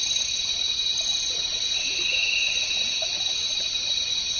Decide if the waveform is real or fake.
real